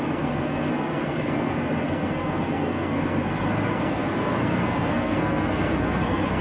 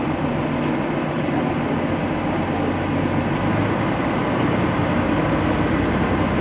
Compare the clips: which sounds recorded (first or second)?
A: second